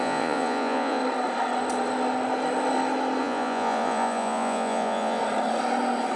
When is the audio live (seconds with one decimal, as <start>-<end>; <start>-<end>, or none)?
1.0-3.2; 5.2-6.2